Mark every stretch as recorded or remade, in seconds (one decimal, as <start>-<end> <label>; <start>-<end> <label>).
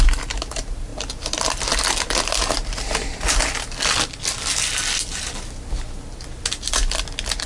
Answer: 0.0-7.5 recorded